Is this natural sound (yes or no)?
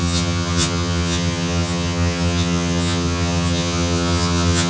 no